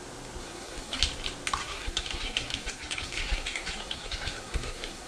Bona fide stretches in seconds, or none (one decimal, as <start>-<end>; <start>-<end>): 0.0-0.4; 1.0-1.6